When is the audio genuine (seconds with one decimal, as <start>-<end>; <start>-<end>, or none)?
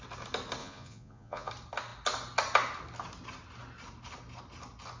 0.0-0.6; 1.5-5.0